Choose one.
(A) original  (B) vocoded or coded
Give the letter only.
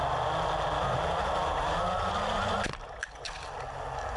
A